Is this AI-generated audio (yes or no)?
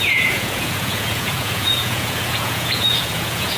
yes